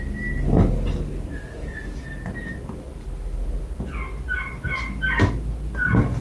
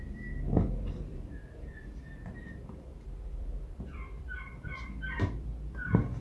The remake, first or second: second